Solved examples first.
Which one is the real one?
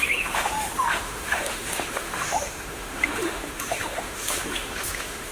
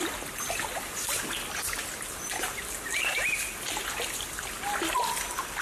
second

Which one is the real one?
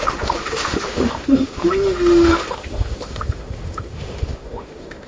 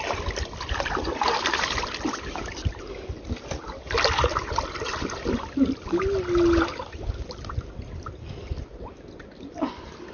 second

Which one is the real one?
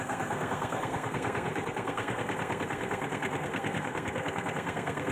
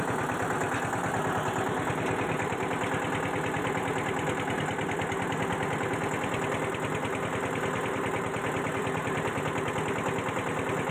second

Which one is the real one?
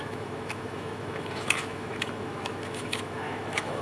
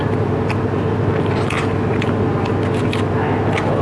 second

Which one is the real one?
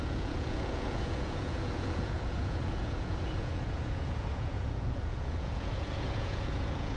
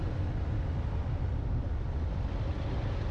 second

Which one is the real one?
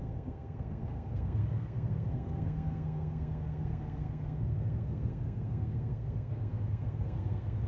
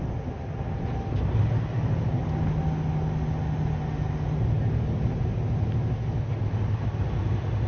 second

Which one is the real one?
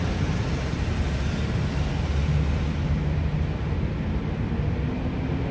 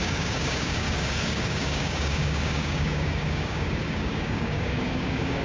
first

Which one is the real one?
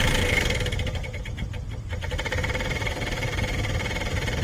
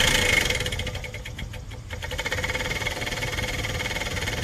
second